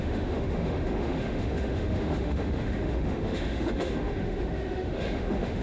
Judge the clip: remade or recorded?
remade